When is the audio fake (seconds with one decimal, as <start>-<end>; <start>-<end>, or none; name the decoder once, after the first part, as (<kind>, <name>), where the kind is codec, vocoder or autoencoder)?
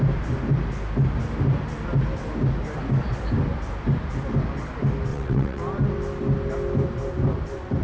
5.1-5.6 (vocoder, WaveNeXt)